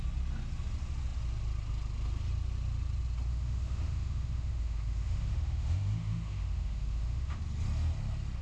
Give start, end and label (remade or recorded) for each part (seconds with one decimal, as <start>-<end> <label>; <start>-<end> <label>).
0.0-3.3 recorded; 3.3-7.4 remade; 7.4-8.4 recorded